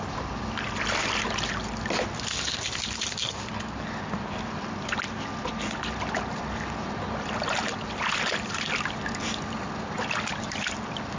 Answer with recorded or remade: recorded